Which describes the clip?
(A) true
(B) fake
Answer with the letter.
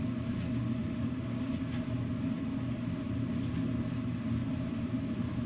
A